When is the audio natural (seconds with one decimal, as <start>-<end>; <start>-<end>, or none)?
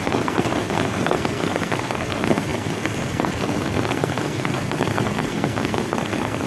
none